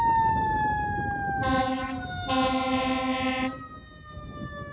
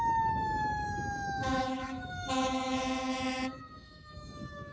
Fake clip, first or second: second